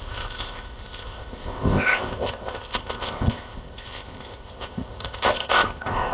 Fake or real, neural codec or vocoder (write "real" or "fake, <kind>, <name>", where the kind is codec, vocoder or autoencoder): fake, codec, ZipCodec